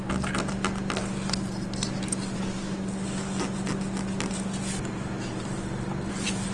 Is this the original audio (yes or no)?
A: yes